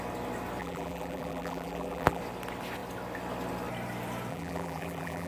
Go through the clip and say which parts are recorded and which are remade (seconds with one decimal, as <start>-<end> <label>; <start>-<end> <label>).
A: 0.0-0.6 recorded; 0.6-2.2 remade; 2.2-4.3 recorded; 4.3-5.3 remade